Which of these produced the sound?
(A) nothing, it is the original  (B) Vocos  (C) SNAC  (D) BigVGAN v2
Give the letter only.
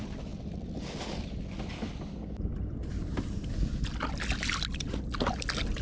A